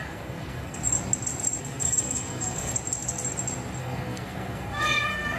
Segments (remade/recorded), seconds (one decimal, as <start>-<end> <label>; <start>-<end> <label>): 0.0-0.8 remade; 0.8-1.6 recorded; 1.6-2.7 remade; 2.7-3.8 recorded; 3.8-5.4 remade